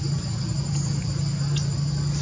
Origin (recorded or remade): recorded